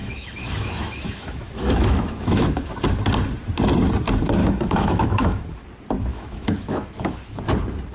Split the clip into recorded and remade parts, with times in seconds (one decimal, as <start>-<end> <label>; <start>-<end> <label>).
0.0-2.7 remade; 2.7-4.4 recorded; 4.4-5.6 remade; 5.6-6.1 recorded; 6.1-7.4 remade; 7.4-7.9 recorded